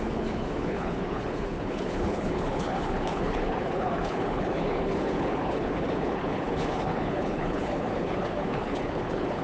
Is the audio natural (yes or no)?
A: no